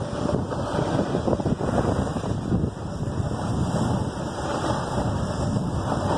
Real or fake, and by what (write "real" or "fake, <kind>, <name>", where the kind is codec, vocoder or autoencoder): real